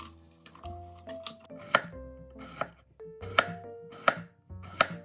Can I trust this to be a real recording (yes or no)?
yes